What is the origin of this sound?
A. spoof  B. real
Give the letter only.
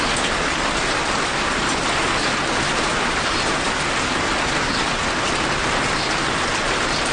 B